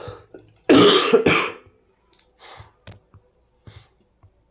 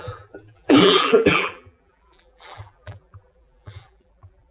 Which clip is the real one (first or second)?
first